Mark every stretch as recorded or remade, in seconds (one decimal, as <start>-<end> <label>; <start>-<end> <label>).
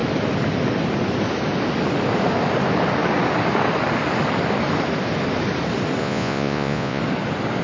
0.0-6.0 recorded; 6.0-7.0 remade; 7.0-7.6 recorded